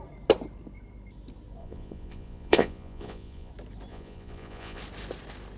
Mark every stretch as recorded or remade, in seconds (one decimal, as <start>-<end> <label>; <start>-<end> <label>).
0.0-1.6 recorded; 1.6-3.5 remade; 3.5-3.9 recorded; 3.9-4.8 remade; 4.8-5.6 recorded